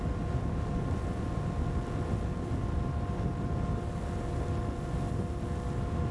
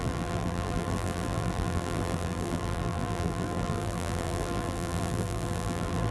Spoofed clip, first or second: second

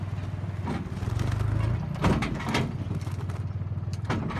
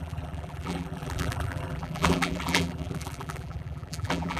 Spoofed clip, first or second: second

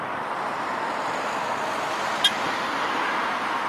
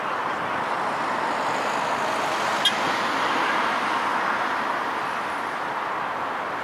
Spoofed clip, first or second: second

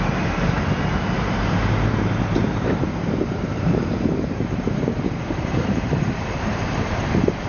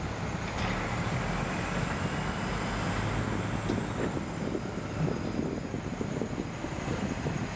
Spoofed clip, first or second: first